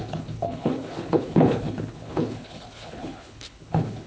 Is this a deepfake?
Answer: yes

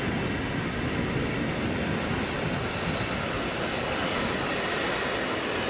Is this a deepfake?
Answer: no